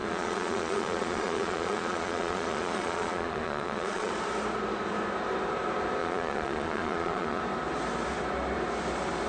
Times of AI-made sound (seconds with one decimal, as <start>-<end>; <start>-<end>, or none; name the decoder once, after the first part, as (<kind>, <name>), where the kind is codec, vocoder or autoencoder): 0.0-4.1 (vocoder, Vocos); 6.0-7.4